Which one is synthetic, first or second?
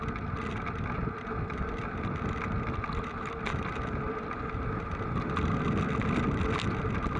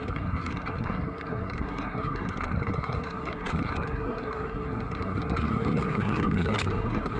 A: second